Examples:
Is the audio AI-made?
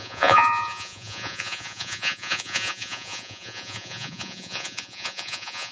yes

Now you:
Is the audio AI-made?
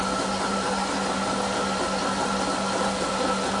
no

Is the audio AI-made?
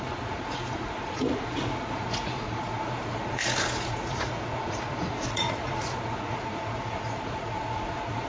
yes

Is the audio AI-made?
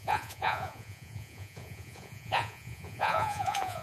yes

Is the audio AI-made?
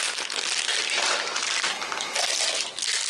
no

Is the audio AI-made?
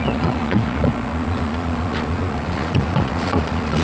yes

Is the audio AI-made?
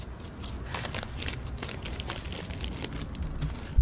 no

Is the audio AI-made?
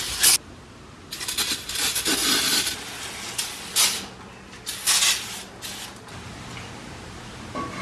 no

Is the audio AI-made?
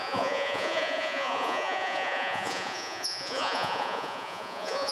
yes